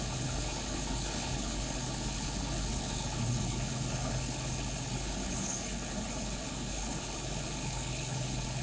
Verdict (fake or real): fake